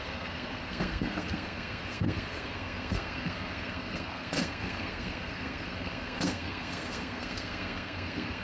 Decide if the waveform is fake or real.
fake